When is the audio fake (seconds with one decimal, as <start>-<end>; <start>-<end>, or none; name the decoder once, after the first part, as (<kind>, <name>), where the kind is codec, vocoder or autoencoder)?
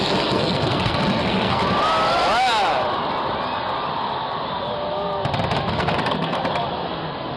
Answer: 0.0-1.6 (codec, SNAC); 5.7-6.4